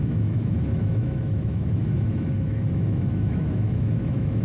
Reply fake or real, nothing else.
fake